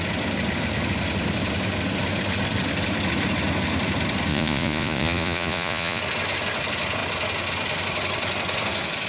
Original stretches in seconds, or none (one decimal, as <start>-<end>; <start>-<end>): 0.0-4.3; 6.0-9.1